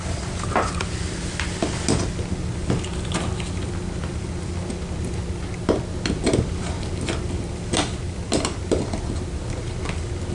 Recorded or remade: recorded